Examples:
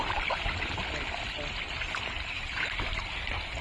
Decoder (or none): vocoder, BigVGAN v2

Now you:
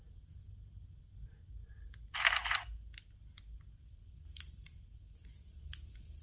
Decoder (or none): none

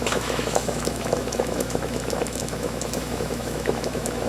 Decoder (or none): autoencoder, DAC-VAE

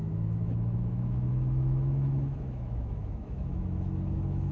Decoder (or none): autoencoder, DAC-VAE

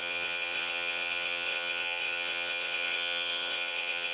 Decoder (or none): vocoder, WaveNeXt